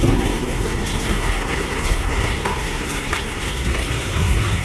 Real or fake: fake